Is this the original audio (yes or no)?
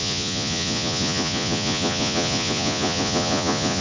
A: no